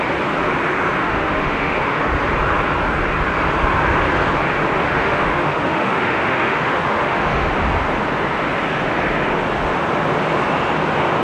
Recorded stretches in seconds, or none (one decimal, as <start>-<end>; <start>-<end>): 0.0-1.0; 2.0-4.8; 7.5-11.2